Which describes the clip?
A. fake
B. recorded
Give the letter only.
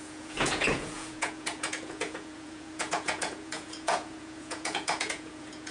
A